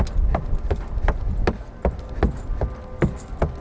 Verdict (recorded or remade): recorded